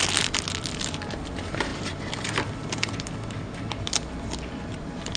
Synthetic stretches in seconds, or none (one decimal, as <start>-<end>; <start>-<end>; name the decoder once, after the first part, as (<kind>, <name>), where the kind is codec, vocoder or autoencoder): none